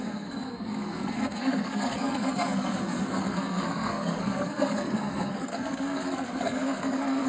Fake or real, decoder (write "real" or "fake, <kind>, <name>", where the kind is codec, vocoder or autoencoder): fake, codec, SNAC